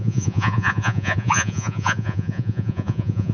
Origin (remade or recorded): remade